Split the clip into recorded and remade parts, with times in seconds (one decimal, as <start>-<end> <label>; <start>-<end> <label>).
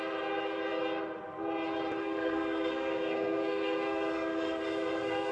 0.0-2.0 recorded; 2.0-5.3 remade